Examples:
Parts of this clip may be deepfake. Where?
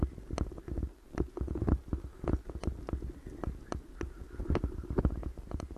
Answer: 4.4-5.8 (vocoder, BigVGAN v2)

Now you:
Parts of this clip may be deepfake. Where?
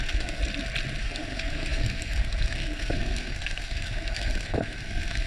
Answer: 0.0-0.4 (codec, SNAC); 1.0-5.3